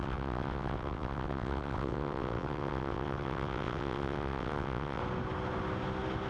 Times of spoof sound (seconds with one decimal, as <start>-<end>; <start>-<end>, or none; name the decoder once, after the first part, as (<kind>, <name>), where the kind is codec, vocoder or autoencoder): 0.0-5.0 (vocoder, WaveNeXt)